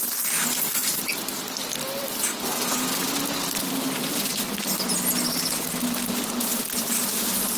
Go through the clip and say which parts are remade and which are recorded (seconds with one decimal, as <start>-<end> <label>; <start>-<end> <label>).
0.0-7.6 recorded